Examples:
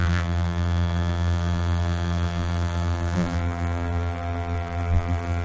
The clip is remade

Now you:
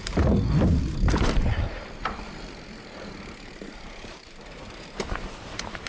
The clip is remade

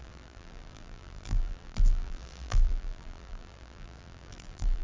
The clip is remade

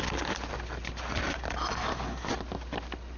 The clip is recorded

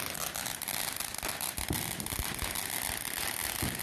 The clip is recorded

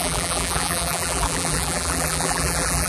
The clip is remade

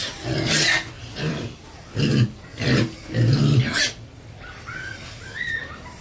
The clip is remade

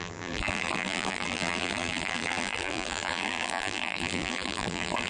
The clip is remade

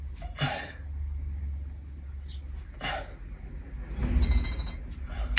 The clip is recorded